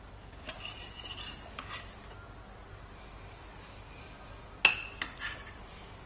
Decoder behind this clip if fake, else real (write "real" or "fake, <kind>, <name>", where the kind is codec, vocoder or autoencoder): real